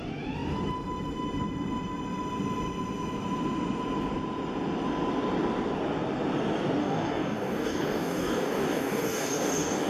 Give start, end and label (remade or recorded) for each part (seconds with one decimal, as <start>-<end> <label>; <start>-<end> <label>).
0.0-6.8 recorded; 6.8-9.9 remade